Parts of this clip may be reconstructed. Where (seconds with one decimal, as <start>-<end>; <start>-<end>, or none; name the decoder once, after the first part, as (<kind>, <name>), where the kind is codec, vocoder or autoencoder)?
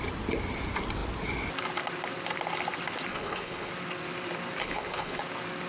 3.1-3.7 (codec, HILCodec); 4.6-5.2